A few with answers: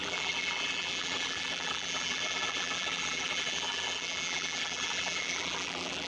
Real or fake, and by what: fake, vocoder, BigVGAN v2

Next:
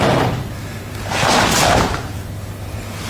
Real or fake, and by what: real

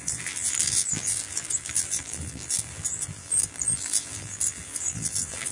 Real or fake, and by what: fake, vocoder, BigVGAN v2